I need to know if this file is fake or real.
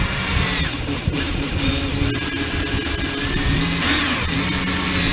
real